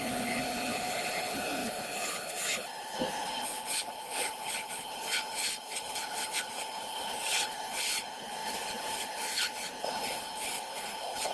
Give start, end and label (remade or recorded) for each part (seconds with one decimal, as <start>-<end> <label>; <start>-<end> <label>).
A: 0.0-11.3 remade